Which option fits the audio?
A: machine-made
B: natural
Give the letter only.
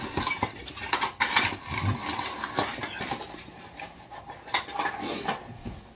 B